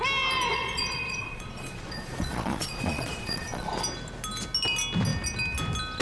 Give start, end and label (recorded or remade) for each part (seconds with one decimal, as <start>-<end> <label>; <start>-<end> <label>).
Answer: 0.0-0.5 recorded; 0.5-3.7 remade; 3.7-6.0 recorded